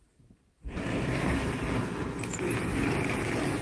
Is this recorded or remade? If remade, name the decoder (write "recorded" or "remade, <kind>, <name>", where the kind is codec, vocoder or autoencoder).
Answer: recorded